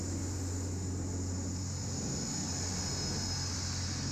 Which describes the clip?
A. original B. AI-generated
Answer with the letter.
A